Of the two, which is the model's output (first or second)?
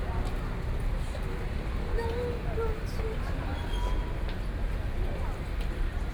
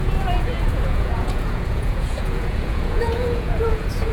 second